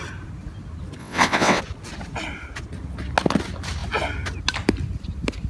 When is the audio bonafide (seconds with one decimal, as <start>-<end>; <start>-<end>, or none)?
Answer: 0.0-1.0; 1.6-5.5

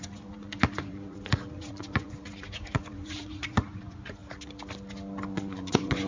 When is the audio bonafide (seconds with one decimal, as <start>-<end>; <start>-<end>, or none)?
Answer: 4.2-5.3

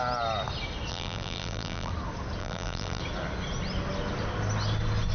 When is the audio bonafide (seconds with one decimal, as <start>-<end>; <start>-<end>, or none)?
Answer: 0.0-0.9; 1.9-2.4; 3.0-5.1

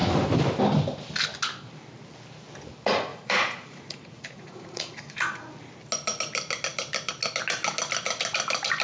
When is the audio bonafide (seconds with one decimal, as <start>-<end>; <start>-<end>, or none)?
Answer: 0.0-3.1; 5.5-8.8

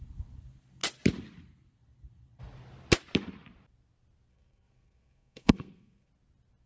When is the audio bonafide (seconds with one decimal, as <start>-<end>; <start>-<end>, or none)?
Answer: 0.0-4.3; 6.1-6.7

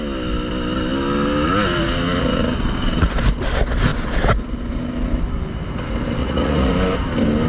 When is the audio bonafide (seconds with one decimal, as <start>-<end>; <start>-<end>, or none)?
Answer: 0.0-6.2; 6.7-7.5

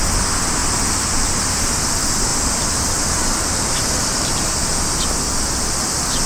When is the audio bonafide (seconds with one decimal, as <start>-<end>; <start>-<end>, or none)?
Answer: 0.0-0.6; 1.8-2.3; 4.7-6.3